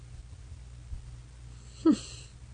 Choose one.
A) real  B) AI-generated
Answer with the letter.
A